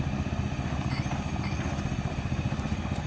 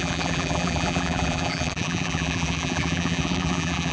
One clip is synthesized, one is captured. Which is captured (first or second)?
first